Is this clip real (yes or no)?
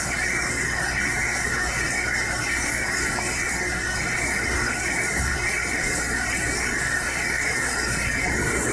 no